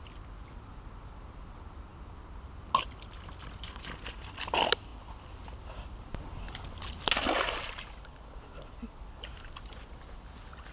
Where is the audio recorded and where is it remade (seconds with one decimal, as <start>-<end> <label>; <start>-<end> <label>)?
0.0-10.7 recorded